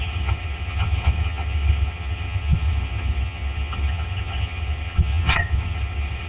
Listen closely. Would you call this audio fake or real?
fake